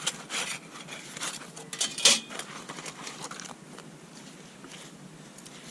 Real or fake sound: real